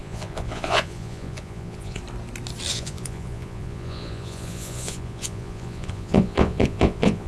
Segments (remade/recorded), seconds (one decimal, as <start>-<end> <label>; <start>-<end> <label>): 0.0-2.0 remade; 2.0-2.7 recorded; 2.7-7.3 remade

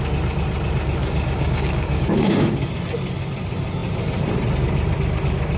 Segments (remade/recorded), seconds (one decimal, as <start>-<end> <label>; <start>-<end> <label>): 0.0-1.0 recorded; 1.0-2.7 remade; 2.7-5.6 recorded